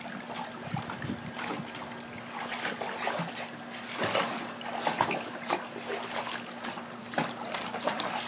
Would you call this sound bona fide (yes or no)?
yes